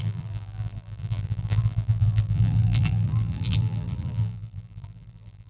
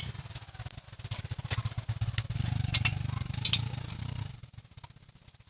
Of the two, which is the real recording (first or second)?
second